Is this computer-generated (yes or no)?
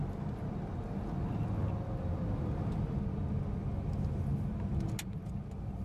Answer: no